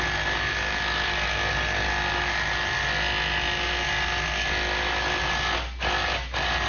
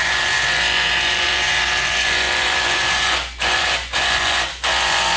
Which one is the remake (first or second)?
second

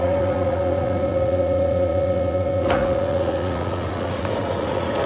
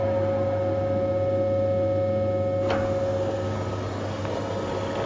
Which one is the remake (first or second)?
first